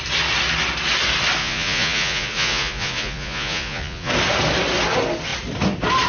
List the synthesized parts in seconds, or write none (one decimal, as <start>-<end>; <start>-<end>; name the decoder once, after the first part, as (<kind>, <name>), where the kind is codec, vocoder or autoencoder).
1.4-4.1 (vocoder, Vocos)